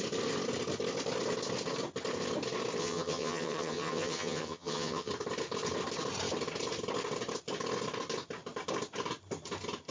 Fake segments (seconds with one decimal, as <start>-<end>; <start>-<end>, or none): 2.8-5.1